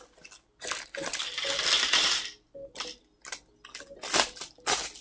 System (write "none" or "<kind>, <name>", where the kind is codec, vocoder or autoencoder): none